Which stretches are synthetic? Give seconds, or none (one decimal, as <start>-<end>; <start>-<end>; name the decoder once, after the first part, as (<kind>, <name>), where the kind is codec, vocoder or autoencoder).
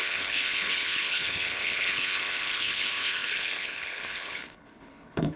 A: 0.0-5.4 (codec, HILCodec)